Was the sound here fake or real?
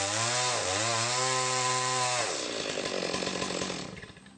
real